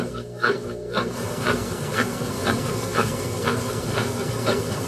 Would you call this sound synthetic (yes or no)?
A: yes